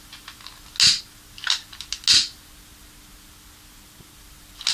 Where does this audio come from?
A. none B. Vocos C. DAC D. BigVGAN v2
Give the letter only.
A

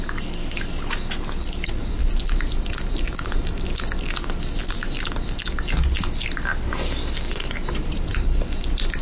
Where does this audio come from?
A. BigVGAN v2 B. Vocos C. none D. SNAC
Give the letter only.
C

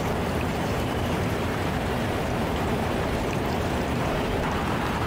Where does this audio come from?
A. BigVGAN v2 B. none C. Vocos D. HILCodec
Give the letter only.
A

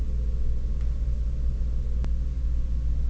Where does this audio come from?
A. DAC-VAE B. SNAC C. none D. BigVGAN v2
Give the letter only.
C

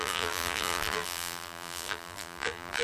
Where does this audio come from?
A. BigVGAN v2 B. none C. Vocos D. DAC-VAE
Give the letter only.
A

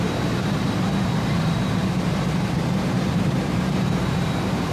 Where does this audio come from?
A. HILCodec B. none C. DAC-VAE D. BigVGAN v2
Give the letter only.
D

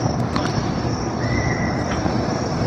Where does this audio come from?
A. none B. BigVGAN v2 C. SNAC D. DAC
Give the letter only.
B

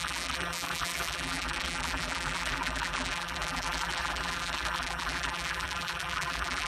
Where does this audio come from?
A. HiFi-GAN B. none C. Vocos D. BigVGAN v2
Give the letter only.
D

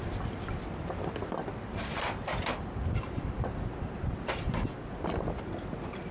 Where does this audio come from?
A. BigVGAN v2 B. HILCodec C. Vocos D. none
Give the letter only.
D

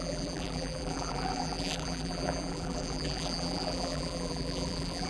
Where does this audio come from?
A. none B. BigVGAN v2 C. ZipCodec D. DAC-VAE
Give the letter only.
B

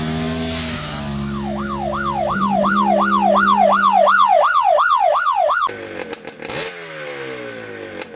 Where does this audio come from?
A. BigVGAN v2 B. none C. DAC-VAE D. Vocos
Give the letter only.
B